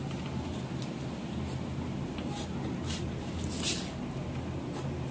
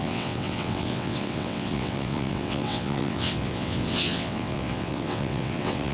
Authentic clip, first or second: first